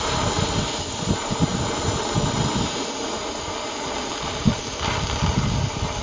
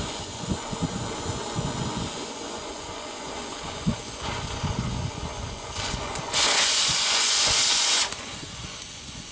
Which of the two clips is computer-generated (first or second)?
second